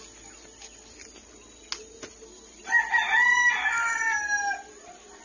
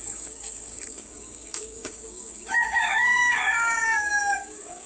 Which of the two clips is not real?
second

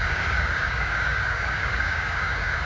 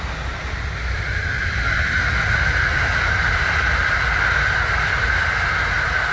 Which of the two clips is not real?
first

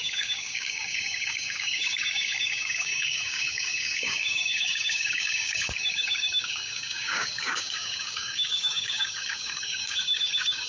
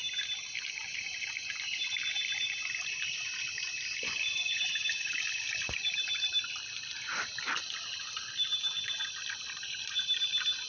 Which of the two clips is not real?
first